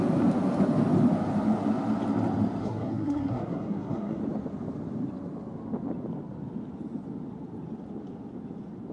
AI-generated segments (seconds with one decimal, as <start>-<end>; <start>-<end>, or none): 2.6-4.2